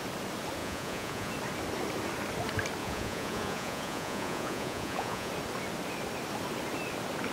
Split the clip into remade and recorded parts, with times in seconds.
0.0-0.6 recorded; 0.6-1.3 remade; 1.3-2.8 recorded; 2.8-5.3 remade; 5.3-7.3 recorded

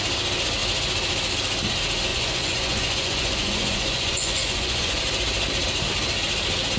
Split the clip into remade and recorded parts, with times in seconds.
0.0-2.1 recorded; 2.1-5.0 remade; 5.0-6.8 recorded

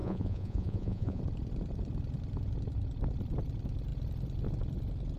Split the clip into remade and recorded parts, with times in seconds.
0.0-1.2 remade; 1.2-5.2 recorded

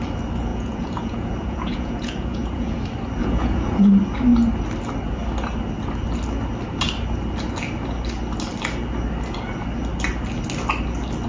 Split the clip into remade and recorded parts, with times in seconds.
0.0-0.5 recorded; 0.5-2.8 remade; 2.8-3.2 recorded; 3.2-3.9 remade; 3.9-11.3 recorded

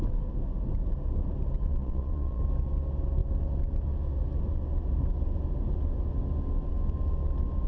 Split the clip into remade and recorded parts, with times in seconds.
0.0-1.7 recorded; 1.7-2.4 remade; 2.4-7.7 recorded

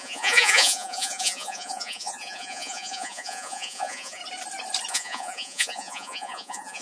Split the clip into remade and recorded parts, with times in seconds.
0.0-4.2 remade; 4.2-4.9 recorded; 4.9-6.8 remade